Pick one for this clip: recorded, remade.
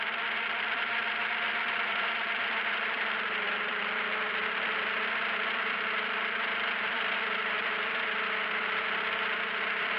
remade